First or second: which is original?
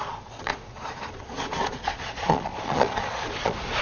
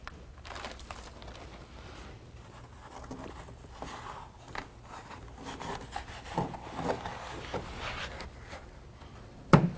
second